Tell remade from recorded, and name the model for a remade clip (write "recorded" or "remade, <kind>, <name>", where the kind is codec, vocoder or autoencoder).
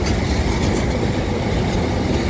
recorded